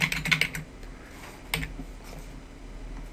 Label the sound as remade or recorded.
recorded